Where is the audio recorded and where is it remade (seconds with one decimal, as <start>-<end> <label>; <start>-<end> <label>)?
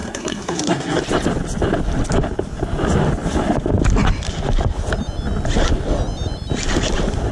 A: 0.0-1.0 remade; 1.0-7.3 recorded